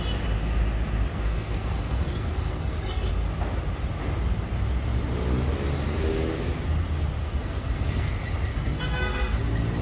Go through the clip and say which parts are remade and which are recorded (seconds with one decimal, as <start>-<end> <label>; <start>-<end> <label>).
0.0-1.1 recorded; 1.1-3.1 remade; 3.1-7.2 recorded; 7.2-8.1 remade; 8.1-8.5 recorded; 8.5-9.4 remade; 9.4-9.8 recorded